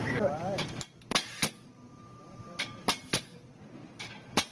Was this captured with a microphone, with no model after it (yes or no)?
yes